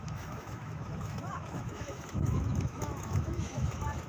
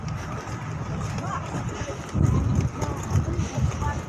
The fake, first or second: first